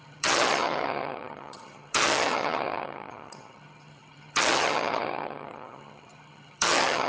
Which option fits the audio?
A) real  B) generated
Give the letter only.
B